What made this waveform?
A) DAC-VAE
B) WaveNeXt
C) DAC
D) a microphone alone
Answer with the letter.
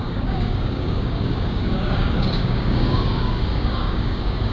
C